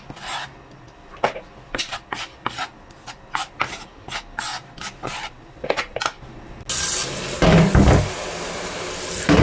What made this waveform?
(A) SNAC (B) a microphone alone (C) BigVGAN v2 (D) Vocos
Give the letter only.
B